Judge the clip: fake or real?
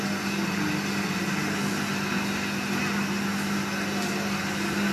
real